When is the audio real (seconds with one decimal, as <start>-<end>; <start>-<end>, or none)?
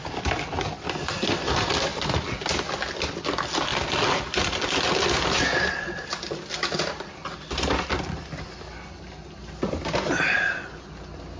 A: 0.0-11.4